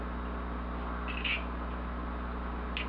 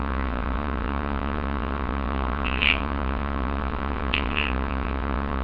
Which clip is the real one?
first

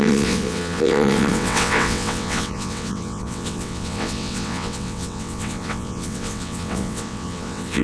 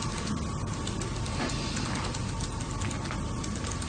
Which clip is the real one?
second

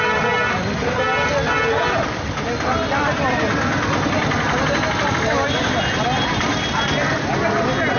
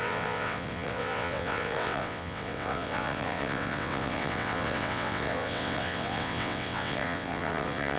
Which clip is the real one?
first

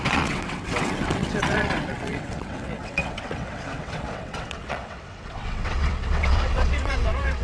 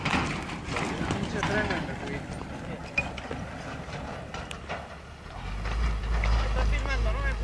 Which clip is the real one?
second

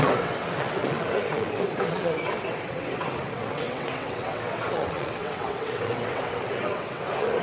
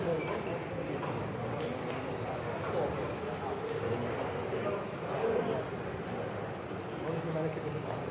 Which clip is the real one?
second